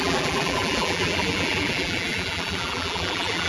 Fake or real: fake